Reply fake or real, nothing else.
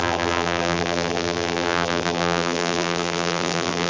fake